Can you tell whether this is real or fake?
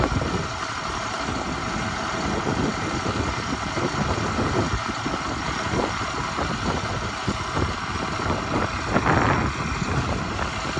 real